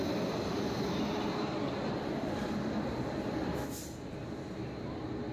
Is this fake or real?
real